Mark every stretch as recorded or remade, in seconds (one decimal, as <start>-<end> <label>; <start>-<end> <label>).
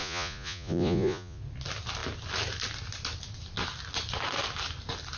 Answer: 0.0-1.4 remade; 1.4-5.2 recorded